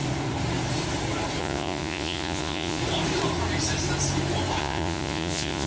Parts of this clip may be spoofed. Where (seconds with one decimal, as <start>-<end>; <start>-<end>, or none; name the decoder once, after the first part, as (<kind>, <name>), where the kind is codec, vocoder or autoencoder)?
1.4-2.8 (vocoder, Vocos); 4.6-5.7